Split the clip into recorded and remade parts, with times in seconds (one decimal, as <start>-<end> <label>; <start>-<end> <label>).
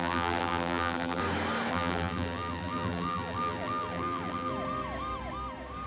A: 0.0-1.2 remade; 1.2-1.7 recorded; 1.7-4.5 remade; 4.5-5.9 recorded